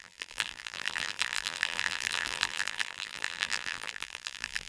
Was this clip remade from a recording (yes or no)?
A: yes